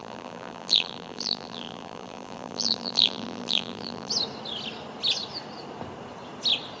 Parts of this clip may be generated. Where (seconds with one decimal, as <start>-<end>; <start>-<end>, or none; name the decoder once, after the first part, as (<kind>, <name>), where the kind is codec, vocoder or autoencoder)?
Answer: 0.0-4.1 (vocoder, BigVGAN v2)